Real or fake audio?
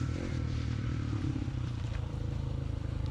fake